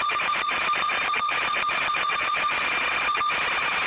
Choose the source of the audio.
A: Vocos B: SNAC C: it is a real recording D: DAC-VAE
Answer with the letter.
A